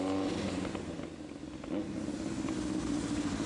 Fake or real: real